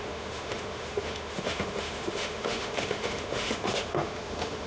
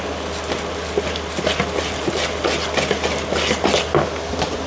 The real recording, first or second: second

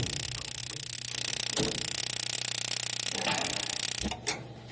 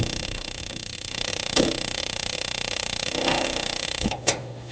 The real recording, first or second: first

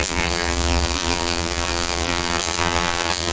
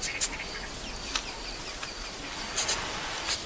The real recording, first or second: second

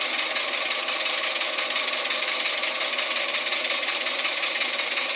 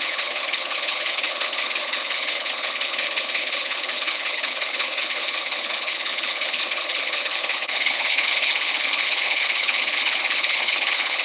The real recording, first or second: first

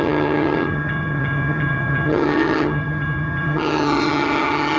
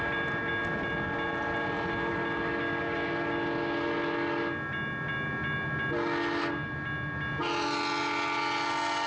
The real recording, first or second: second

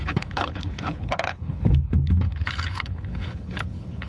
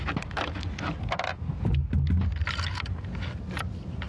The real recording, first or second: second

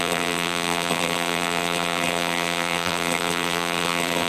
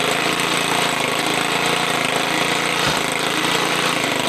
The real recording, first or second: second